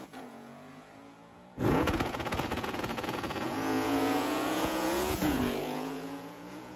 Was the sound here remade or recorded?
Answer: remade